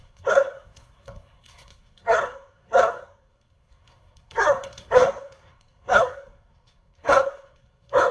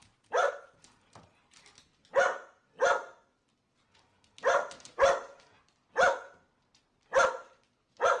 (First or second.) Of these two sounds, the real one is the second